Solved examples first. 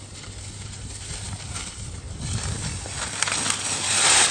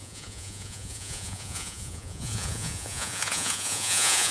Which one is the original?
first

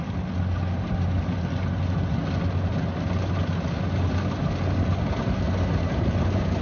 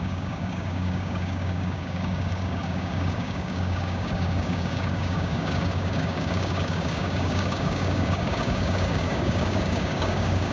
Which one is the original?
first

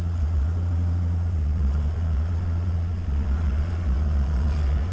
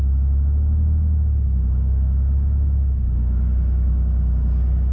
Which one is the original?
second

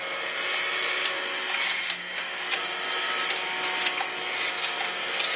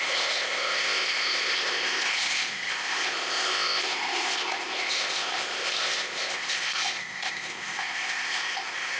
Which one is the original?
first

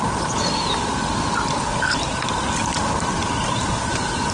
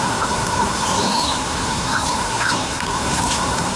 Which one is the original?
first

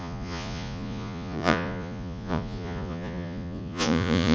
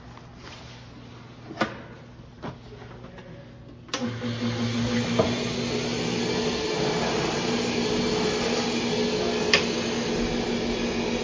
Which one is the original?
second